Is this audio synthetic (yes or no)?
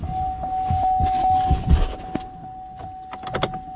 no